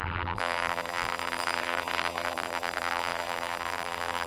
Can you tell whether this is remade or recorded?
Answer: remade